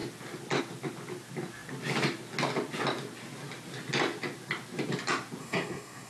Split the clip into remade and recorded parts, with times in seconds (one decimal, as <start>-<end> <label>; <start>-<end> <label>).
0.0-5.4 recorded; 5.4-6.1 remade